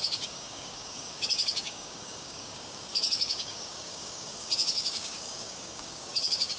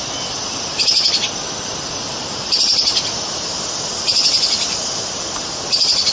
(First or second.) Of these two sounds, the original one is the second